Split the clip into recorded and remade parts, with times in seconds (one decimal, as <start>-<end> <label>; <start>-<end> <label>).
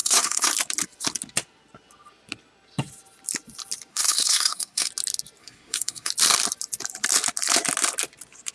0.0-0.5 remade; 0.5-3.9 recorded; 3.9-4.9 remade; 4.9-5.4 recorded; 5.4-6.1 remade; 6.1-8.5 recorded